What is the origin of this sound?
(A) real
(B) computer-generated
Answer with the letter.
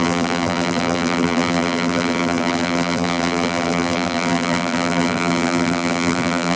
B